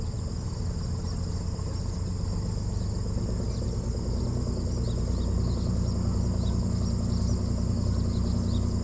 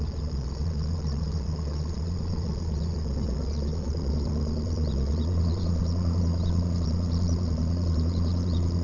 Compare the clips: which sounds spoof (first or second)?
second